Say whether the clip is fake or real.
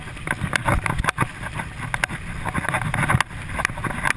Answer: real